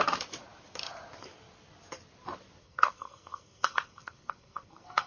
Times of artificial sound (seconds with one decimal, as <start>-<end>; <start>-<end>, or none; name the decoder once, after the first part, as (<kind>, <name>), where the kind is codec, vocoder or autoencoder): 2.6-5.1 (codec, SNAC)